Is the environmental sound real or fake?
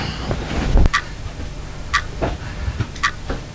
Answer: real